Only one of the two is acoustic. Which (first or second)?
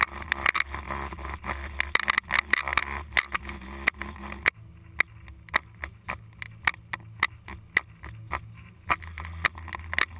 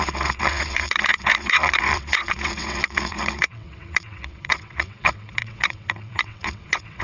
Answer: first